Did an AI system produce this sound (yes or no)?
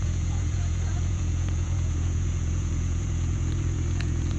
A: yes